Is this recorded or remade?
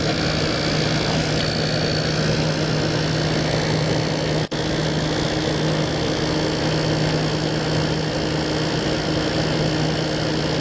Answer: recorded